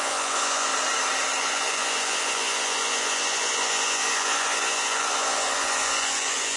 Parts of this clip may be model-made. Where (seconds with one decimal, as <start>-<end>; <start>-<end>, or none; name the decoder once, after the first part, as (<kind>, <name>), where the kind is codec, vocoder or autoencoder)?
0.0-0.7 (vocoder, Vocos); 1.4-6.6